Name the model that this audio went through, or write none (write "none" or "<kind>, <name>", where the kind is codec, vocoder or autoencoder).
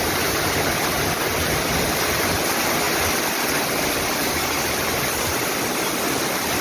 none